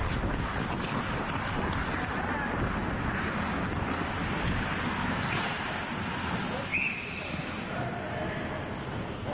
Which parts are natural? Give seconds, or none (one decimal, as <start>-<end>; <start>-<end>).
0.0-9.3